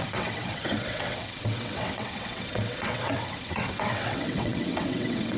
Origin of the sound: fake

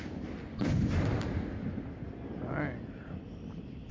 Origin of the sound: real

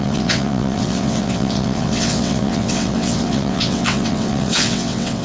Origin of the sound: fake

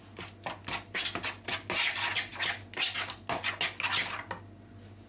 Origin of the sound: real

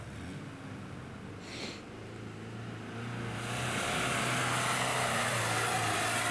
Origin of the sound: real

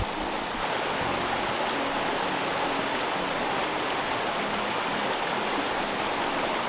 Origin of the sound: real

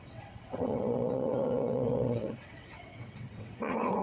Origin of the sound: fake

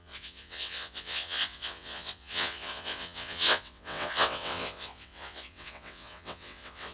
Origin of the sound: fake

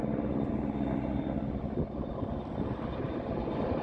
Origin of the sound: real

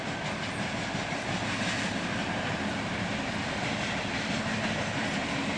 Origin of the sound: real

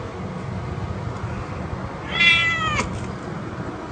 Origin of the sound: real